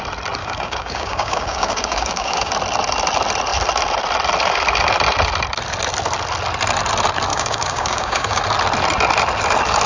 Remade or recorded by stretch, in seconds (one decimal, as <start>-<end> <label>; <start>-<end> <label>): 0.0-0.4 recorded; 0.4-2.5 remade; 2.5-7.3 recorded; 7.3-8.4 remade; 8.4-9.9 recorded